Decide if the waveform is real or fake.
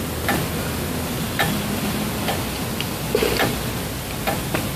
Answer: real